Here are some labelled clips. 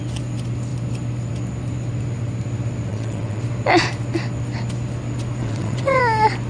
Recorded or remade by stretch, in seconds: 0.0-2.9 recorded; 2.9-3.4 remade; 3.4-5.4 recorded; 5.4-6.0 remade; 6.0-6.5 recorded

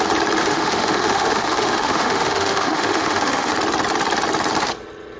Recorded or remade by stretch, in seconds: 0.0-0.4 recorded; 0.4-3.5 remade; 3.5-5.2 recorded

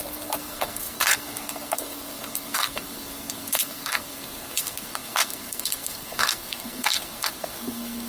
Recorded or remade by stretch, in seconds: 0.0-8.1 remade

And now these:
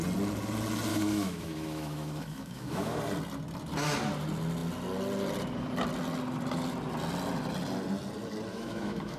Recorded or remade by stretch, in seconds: 0.0-0.9 recorded; 0.9-3.0 remade; 3.0-8.5 recorded; 8.5-9.2 remade

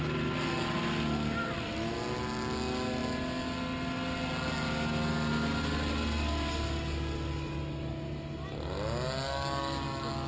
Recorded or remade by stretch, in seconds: 0.0-10.3 recorded

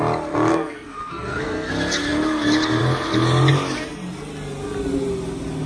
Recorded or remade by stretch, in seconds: 0.0-0.5 recorded; 0.5-1.7 remade; 1.7-5.7 recorded

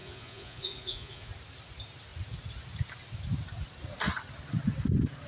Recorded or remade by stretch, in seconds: 0.0-1.3 remade; 1.3-5.3 recorded

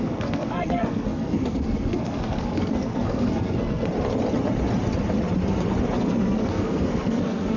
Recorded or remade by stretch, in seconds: 0.0-3.9 remade; 3.9-6.0 recorded; 6.0-7.6 remade